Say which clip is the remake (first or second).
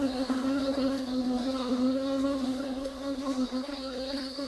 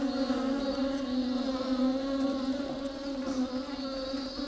first